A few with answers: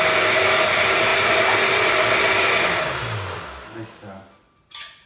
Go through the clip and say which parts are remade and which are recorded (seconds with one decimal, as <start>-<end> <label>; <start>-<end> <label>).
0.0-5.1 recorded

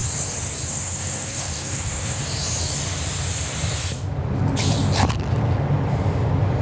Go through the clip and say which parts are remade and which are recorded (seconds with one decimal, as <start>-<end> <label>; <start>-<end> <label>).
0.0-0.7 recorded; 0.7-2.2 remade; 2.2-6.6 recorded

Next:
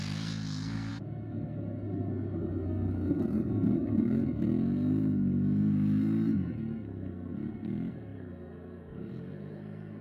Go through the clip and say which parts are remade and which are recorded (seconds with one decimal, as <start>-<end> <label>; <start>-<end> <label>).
0.0-10.0 remade

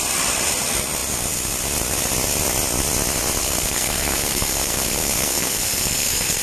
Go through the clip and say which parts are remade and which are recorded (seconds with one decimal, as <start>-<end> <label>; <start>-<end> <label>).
0.0-3.4 recorded; 3.4-6.4 remade

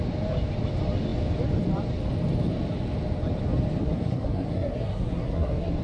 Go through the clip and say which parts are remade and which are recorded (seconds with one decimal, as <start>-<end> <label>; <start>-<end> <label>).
0.0-3.8 recorded; 3.8-5.8 remade